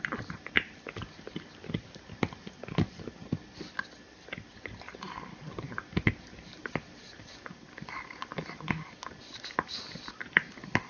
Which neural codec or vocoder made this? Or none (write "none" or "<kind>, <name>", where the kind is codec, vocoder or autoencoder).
none